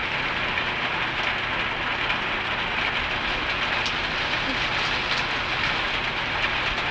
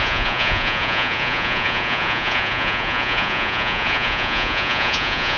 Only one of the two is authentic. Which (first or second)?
first